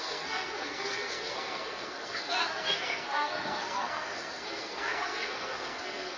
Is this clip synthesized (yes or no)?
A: yes